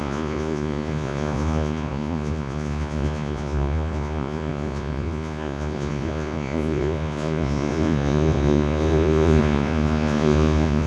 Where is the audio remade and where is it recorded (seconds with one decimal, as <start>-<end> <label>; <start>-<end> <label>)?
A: 0.0-10.9 remade